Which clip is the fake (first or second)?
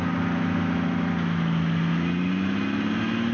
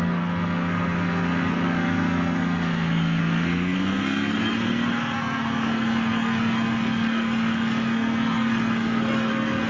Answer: second